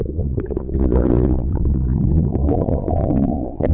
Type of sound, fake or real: fake